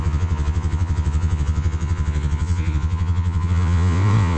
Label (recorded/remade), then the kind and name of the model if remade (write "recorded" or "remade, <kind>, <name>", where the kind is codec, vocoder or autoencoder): remade, vocoder, Vocos